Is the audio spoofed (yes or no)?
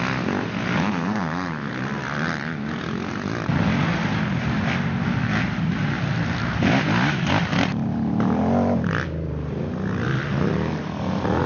no